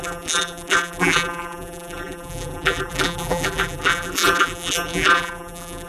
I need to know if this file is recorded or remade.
remade